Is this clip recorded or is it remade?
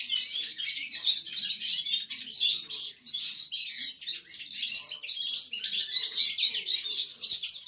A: recorded